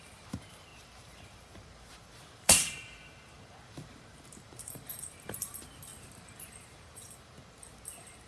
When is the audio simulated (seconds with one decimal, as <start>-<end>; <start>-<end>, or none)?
0.0-8.3